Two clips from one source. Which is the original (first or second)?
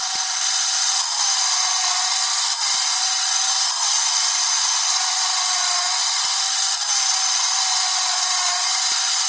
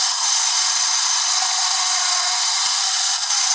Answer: first